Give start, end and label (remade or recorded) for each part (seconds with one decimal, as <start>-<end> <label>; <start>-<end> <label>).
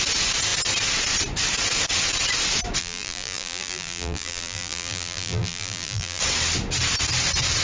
0.0-2.8 recorded; 2.8-6.2 remade; 6.2-7.6 recorded